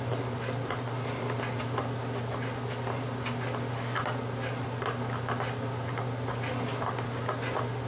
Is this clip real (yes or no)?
yes